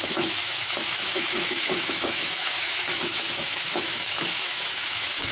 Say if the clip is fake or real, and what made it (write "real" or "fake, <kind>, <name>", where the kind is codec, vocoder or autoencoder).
fake, autoencoder, DAC-VAE